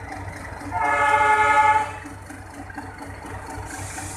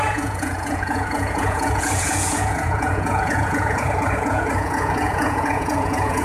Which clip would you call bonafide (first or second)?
first